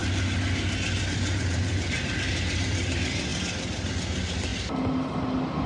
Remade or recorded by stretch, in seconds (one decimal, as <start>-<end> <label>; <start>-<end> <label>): 0.0-1.0 recorded; 1.0-3.3 remade; 3.3-3.9 recorded; 3.9-4.5 remade; 4.5-5.7 recorded